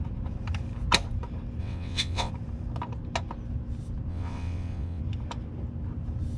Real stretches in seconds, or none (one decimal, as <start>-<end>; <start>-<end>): 0.0-1.6; 2.3-4.1; 5.0-6.4